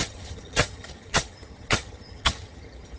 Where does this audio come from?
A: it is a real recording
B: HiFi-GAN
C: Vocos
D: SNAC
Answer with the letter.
B